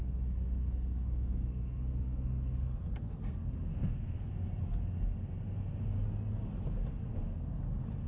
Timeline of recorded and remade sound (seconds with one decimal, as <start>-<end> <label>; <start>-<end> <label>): 0.0-4.3 remade; 4.3-7.1 recorded; 7.1-7.6 remade; 7.6-8.1 recorded